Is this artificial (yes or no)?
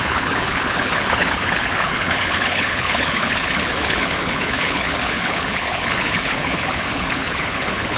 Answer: yes